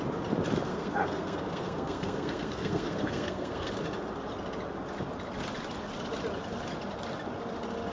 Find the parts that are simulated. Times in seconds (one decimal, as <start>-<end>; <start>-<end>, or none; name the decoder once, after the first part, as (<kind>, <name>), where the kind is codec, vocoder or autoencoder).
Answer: 0.7-3.7 (codec, SNAC)